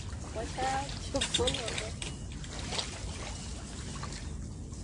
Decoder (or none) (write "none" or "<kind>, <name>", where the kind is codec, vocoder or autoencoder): none